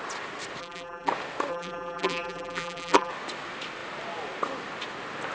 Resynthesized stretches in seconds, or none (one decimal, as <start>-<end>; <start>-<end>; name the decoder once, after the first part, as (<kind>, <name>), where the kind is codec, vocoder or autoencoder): 0.6-1.1 (vocoder, BigVGAN v2); 1.5-3.1